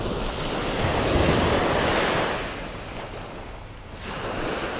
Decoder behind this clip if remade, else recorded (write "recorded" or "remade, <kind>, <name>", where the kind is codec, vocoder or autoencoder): recorded